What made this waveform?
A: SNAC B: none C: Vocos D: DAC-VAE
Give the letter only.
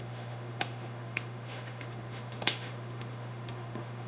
D